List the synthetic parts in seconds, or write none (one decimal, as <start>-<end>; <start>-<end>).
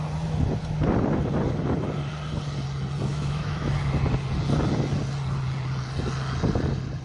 3.1-3.7